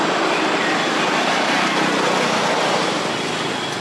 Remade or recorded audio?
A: recorded